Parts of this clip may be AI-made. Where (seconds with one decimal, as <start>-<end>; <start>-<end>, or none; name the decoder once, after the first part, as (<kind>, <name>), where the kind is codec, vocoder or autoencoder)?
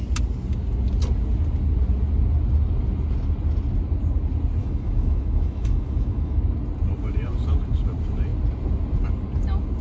4.6-6.4 (autoencoder, DAC-VAE)